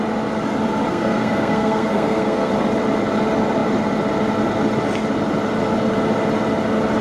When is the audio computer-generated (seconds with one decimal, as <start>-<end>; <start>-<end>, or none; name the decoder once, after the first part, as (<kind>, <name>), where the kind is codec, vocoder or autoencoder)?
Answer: 0.9-2.5 (codec, SNAC)

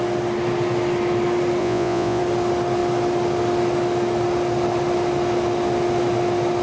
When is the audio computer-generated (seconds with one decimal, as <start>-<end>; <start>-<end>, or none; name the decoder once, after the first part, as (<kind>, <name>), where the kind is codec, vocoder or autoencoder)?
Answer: 1.6-2.2 (vocoder, Vocos)

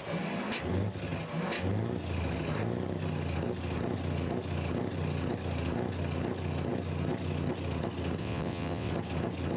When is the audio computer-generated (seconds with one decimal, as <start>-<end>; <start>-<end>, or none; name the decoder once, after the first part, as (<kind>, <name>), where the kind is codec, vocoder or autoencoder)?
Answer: 8.2-8.9 (vocoder, WaveNeXt)